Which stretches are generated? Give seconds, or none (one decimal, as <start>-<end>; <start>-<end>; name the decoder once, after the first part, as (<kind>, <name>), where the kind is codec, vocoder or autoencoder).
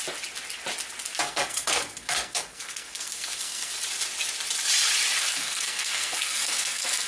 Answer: 1.1-3.7 (codec, SNAC); 5.3-7.1